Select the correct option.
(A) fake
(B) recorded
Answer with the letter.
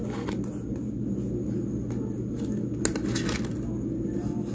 B